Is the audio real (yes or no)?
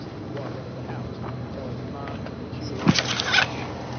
yes